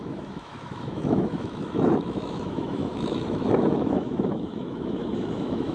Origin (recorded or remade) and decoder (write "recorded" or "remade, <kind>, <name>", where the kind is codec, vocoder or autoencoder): remade, autoencoder, DAC-VAE